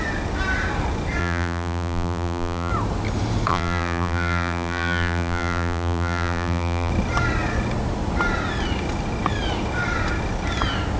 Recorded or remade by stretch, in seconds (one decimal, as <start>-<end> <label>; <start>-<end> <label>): 0.0-1.2 recorded; 1.2-2.7 remade; 2.7-3.5 recorded; 3.5-6.9 remade; 6.9-11.0 recorded